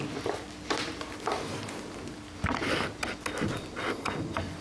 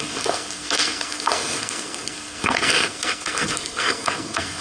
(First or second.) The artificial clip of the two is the second